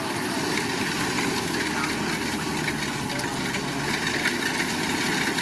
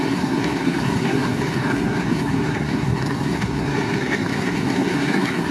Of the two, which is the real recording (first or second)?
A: first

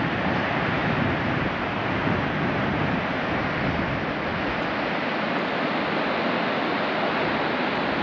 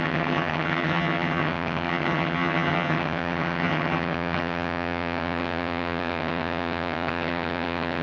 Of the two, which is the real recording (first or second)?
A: first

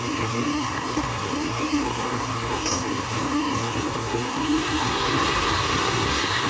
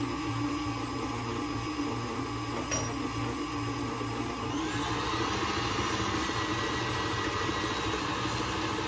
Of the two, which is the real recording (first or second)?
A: second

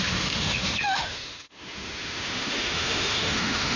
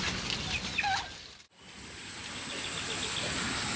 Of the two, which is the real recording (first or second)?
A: second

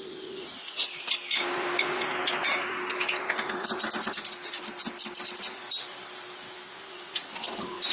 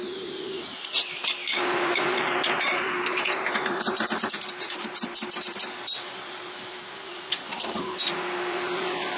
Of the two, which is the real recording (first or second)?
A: first